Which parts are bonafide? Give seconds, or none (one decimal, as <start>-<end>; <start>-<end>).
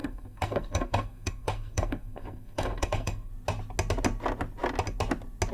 3.3-5.5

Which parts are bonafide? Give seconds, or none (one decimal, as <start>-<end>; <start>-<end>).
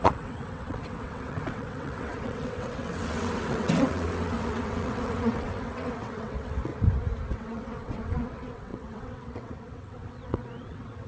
6.7-7.3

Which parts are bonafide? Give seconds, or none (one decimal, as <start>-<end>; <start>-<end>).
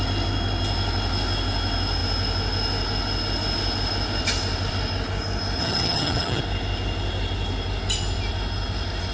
0.0-5.6; 6.4-9.1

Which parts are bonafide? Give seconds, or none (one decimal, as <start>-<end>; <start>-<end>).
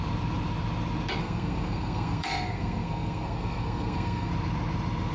0.0-1.2; 4.3-5.1